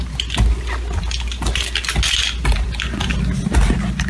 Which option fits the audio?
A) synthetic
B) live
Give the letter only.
B